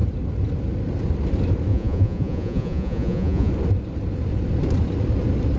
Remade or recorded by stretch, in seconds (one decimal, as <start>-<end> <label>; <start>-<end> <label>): 0.0-1.7 recorded; 1.7-3.5 remade; 3.5-5.6 recorded